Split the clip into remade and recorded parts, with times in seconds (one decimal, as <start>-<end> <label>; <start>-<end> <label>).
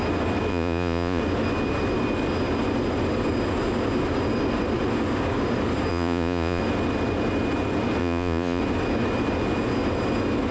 0.0-0.5 recorded; 0.5-1.2 remade; 1.2-5.9 recorded; 5.9-6.6 remade; 6.6-8.0 recorded; 8.0-8.6 remade; 8.6-10.5 recorded